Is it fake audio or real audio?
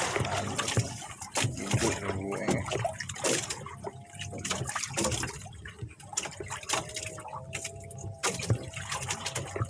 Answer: fake